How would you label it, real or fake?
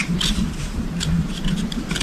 fake